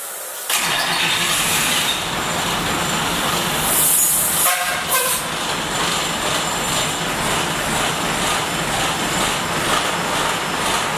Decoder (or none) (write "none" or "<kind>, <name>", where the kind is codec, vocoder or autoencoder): none